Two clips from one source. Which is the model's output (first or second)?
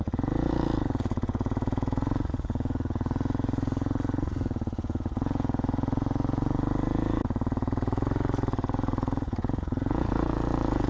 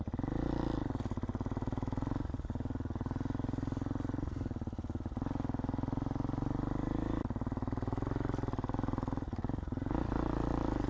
first